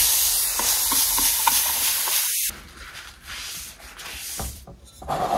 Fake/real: real